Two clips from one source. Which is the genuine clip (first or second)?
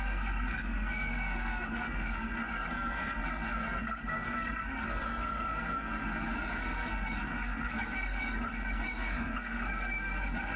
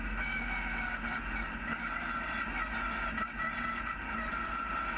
second